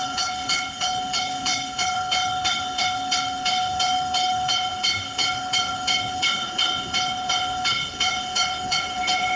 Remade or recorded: remade